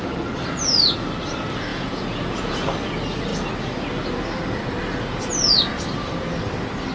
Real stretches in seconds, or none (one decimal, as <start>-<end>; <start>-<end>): 0.0-1.7; 2.7-6.9